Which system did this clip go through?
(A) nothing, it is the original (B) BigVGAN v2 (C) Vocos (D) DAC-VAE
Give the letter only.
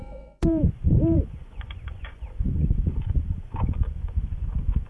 C